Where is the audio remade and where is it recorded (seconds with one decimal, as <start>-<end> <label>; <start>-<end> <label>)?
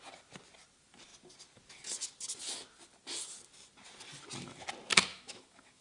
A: 0.0-5.1 recorded; 5.1-5.8 remade